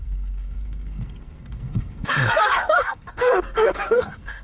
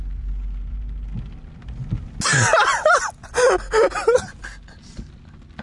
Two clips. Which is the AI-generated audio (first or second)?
first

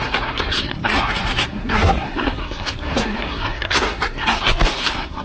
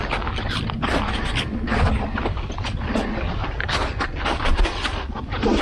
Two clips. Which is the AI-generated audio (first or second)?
first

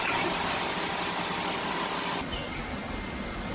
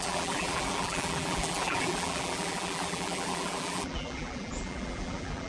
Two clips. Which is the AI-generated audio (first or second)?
second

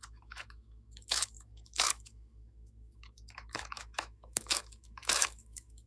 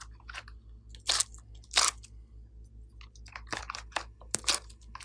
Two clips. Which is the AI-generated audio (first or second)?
first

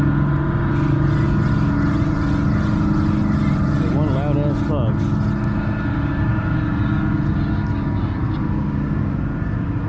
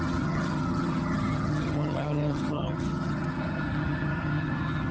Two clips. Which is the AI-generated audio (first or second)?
second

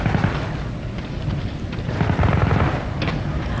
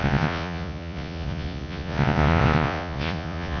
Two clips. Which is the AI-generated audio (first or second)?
second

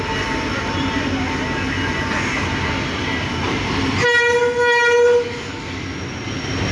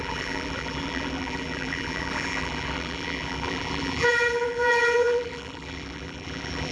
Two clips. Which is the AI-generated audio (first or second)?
second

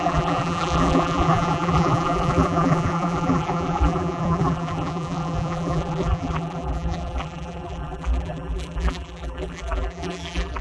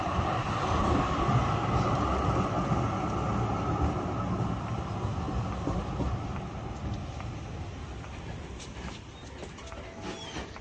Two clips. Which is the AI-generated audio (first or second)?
first